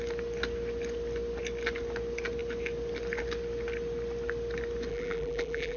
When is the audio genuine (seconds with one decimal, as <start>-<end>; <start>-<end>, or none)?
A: 0.0-4.9